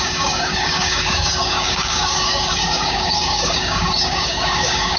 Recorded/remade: remade